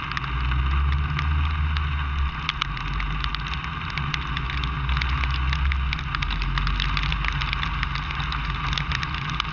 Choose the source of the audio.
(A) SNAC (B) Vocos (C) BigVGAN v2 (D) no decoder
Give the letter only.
D